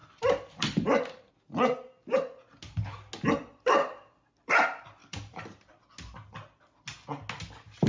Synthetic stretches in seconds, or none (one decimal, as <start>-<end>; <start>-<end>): 0.0-1.3; 5.0-5.7